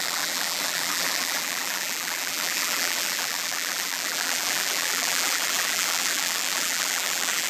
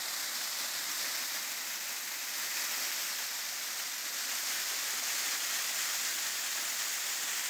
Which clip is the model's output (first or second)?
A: first